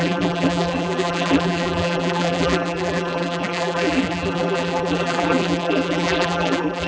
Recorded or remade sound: remade